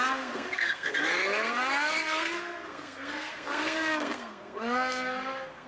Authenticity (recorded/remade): remade